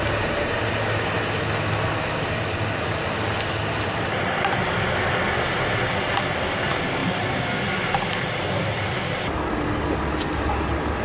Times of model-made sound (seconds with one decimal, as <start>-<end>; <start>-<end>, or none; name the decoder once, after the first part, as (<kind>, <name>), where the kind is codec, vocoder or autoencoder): none